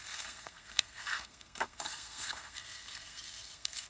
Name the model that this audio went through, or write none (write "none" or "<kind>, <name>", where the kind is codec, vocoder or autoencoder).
codec, SNAC